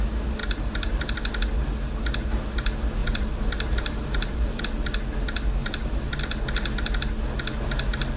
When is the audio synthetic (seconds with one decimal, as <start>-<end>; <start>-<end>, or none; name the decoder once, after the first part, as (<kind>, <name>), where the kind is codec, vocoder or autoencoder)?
0.4-1.3 (vocoder, BigVGAN v2); 3.0-4.6; 5.6-6.2